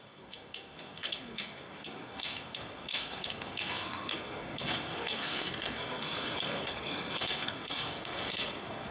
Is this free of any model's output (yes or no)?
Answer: no